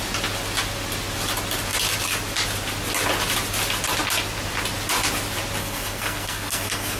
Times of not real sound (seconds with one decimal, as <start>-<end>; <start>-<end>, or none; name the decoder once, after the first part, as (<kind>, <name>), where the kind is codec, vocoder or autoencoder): 5.6-7.0 (codec, SNAC)